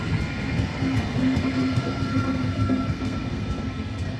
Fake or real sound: fake